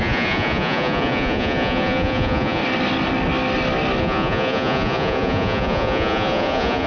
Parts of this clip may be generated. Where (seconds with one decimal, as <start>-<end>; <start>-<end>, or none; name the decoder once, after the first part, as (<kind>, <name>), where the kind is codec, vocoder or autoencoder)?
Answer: 0.0-2.6 (vocoder, Vocos); 4.0-6.9